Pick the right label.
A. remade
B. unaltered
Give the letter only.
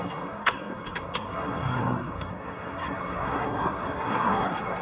A